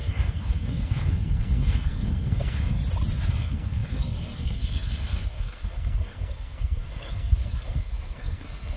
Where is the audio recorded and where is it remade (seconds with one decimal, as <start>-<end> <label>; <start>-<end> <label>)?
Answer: 0.0-2.8 remade; 2.8-3.3 recorded; 3.3-8.8 remade